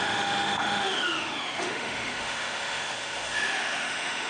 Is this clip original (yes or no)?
no